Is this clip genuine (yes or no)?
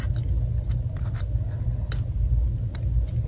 yes